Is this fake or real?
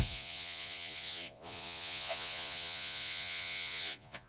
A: fake